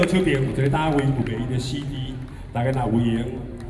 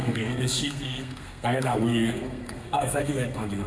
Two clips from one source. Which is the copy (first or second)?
second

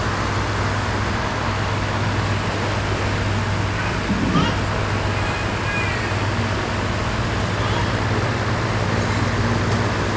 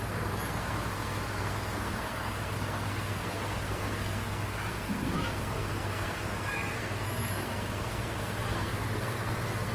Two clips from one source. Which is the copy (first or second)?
second